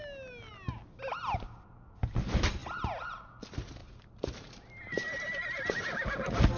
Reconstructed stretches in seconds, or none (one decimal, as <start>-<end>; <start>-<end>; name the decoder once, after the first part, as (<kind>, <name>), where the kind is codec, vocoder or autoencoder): 3.8-5.8 (vocoder, BigVGAN v2)